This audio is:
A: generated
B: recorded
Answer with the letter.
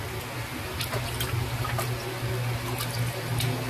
B